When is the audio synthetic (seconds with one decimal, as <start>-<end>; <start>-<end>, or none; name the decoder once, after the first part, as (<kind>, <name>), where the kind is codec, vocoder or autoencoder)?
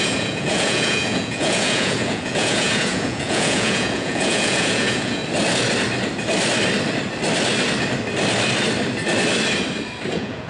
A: 0.0-5.2 (vocoder, Vocos); 10.1-10.5